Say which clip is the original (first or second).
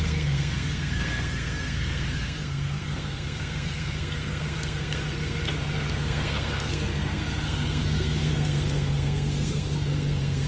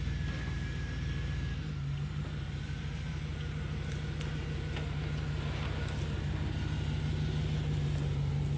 second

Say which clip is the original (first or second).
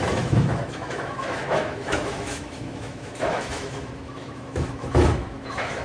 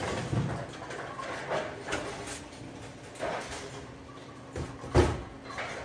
second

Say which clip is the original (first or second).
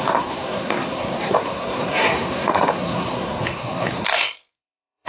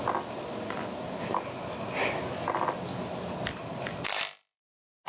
second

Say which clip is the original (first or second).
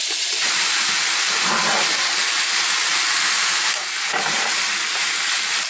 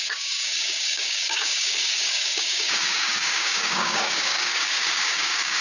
first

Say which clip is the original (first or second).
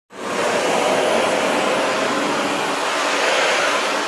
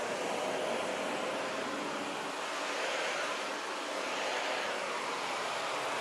first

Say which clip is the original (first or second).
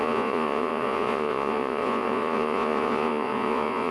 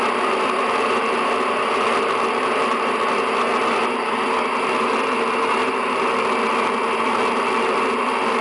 second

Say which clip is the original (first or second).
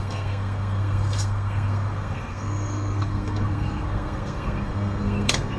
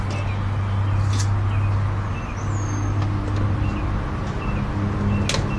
second